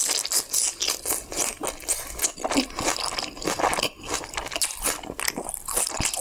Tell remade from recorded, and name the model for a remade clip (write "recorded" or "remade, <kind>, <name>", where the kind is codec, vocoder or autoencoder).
recorded